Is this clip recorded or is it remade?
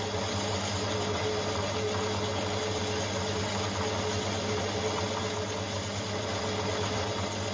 recorded